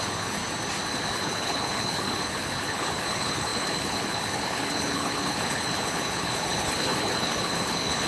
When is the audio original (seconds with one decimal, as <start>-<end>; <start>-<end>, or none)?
0.4-0.9